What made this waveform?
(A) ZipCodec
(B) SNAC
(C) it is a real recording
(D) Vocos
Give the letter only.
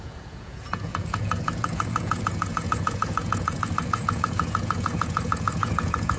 D